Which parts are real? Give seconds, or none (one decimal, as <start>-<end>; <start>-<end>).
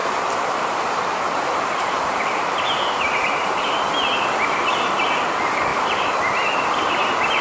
3.6-7.4